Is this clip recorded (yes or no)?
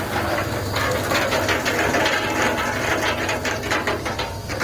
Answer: yes